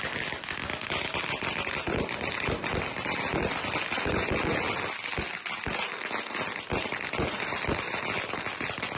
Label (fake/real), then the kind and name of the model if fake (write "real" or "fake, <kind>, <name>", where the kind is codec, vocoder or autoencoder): real